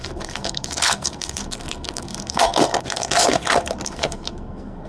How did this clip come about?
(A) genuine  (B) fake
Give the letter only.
B